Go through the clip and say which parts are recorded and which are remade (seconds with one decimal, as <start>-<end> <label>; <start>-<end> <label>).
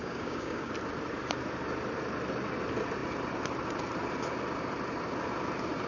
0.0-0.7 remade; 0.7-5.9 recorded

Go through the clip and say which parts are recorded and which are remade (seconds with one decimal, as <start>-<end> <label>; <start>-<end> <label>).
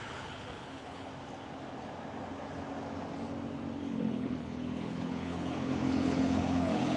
0.0-1.1 remade; 1.1-3.8 recorded; 3.8-7.0 remade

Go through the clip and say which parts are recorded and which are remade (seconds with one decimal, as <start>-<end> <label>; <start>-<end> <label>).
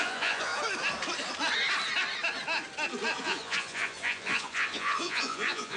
0.0-0.5 remade; 0.5-3.2 recorded; 3.2-5.8 remade